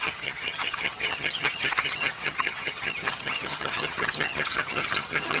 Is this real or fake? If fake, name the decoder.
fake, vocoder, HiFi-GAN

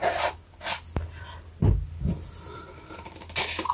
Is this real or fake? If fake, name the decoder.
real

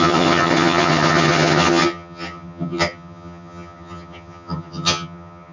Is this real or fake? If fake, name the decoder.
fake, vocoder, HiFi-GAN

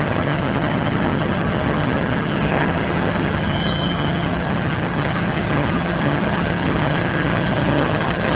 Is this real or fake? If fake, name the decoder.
fake, vocoder, HiFi-GAN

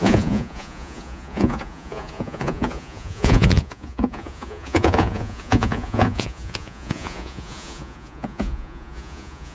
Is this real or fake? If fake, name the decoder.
fake, vocoder, Vocos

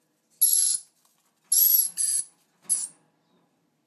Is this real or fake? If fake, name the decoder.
real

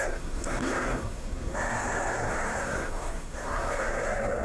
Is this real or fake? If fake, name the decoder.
fake, codec, SNAC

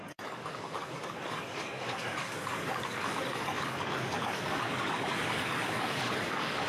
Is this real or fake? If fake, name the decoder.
fake, codec, DAC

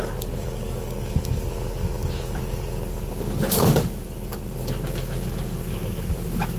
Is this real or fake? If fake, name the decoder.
fake, codec, DAC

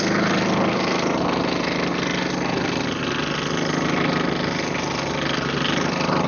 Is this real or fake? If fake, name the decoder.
real